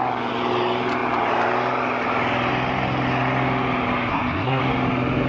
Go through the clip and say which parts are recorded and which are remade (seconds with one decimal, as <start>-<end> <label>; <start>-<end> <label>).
0.0-4.1 recorded; 4.1-4.6 remade; 4.6-5.3 recorded